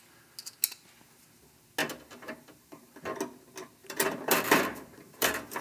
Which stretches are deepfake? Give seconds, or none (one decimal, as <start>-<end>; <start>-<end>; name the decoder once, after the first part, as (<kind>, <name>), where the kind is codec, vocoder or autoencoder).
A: 1.8-3.0 (vocoder, BigVGAN v2); 3.8-5.6